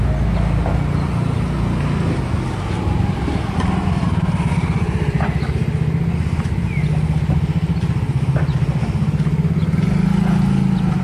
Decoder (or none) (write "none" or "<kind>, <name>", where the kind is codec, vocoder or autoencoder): none